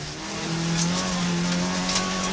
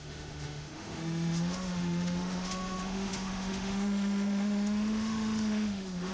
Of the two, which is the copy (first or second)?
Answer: second